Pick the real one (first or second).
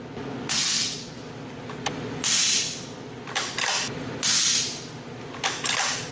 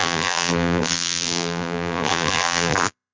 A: first